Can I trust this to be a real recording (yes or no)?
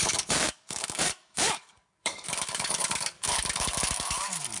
no